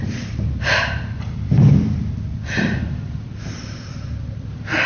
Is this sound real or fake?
fake